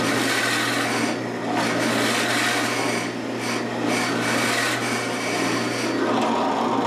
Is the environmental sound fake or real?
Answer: real